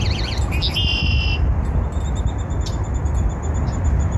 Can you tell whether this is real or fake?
real